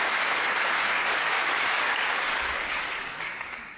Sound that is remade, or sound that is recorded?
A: remade